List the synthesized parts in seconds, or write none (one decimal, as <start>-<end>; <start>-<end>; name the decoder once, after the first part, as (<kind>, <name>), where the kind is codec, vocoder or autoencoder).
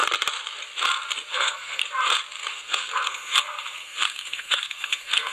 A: 1.3-1.8 (codec, SNAC); 2.5-5.3